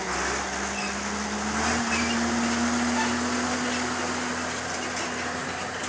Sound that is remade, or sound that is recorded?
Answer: recorded